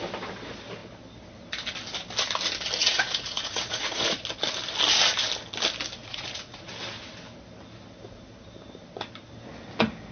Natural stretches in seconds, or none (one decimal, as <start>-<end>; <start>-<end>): 0.0-2.8; 4.2-6.0; 6.7-10.1